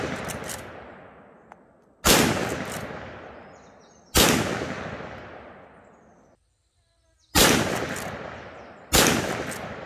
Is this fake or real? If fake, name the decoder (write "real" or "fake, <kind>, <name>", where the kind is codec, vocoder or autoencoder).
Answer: real